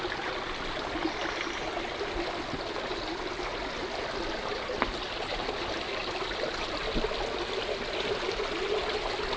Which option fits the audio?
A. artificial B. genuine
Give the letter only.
B